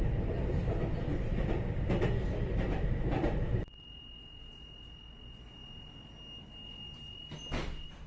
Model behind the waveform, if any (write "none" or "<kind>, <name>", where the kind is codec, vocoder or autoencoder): none